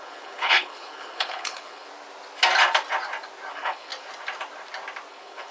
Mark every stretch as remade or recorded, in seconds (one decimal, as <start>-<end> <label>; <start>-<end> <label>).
0.0-1.9 remade; 1.9-3.5 recorded; 3.5-3.9 remade; 3.9-5.1 recorded; 5.1-5.5 remade